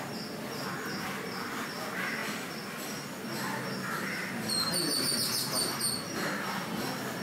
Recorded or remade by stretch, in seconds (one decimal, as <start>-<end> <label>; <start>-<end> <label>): 0.0-7.2 recorded